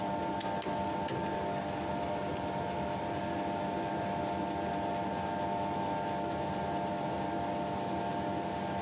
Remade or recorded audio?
recorded